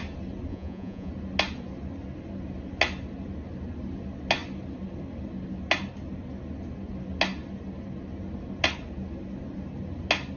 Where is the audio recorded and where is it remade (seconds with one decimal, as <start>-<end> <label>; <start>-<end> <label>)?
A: 0.0-0.5 recorded; 0.5-1.1 remade; 1.1-10.4 recorded